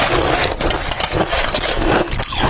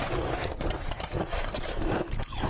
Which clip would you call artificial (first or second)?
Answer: second